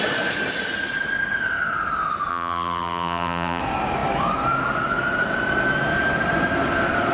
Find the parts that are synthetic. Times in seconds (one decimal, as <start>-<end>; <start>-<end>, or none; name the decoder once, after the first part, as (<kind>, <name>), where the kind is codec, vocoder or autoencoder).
2.3-3.6 (vocoder, BigVGAN v2)